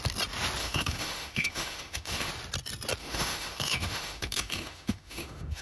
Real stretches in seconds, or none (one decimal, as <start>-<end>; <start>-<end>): 0.0-0.6; 2.3-3.0